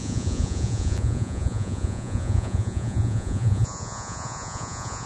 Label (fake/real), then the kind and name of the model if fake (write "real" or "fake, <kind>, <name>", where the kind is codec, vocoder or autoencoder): fake, vocoder, Vocos